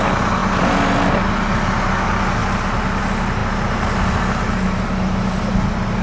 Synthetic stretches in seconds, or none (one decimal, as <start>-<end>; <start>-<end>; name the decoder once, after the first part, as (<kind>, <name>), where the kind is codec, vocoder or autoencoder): none

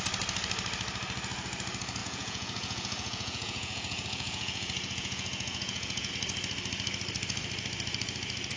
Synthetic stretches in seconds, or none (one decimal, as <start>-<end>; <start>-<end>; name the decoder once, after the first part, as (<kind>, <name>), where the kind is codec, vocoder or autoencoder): 2.0-6.1 (vocoder, Vocos)

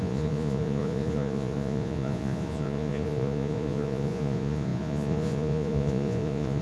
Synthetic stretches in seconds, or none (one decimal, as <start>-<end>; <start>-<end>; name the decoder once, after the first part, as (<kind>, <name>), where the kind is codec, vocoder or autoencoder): 0.0-6.6 (vocoder, Vocos)

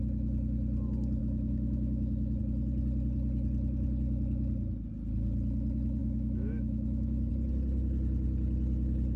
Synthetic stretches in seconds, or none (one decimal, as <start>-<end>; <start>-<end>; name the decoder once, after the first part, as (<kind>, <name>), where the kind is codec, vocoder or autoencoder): 1.2-2.4 (autoencoder, DAC-VAE); 6.0-7.3

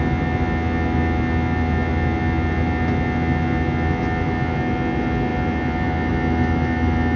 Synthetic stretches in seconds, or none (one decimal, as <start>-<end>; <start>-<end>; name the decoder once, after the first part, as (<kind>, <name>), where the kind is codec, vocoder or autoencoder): none

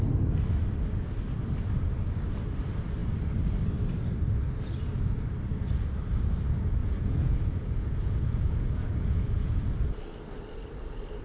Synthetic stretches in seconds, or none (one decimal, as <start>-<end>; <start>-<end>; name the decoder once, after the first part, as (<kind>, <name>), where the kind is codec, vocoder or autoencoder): 6.8-9.9 (vocoder, Vocos)

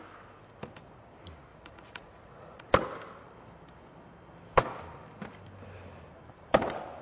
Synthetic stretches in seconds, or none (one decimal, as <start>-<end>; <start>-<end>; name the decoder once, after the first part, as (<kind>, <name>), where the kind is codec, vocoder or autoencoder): 1.5-2.6 (vocoder, Vocos)